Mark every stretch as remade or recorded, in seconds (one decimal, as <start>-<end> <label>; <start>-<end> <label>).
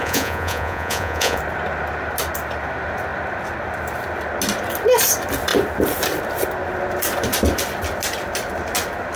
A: 0.0-1.4 remade; 1.4-9.2 recorded